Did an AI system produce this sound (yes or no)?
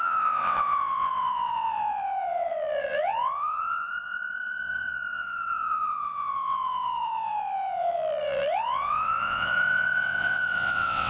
yes